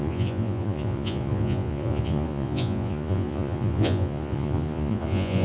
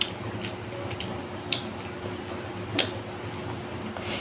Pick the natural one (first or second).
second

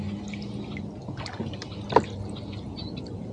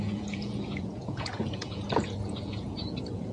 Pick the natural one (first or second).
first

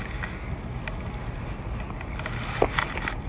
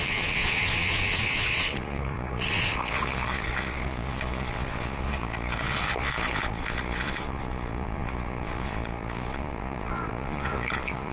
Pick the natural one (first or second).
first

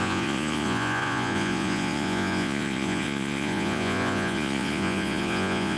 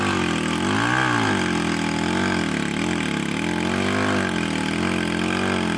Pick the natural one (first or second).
second